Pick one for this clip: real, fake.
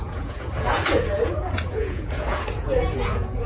fake